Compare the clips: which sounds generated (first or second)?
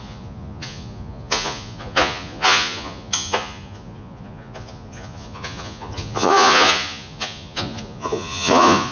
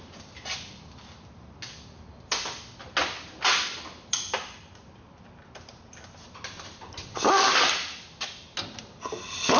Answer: first